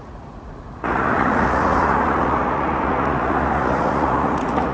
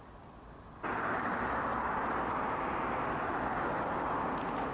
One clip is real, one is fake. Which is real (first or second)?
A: second